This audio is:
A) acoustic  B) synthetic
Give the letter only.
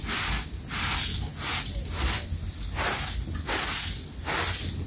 A